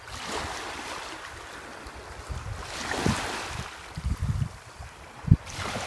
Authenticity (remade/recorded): recorded